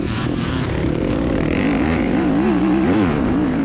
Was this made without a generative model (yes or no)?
no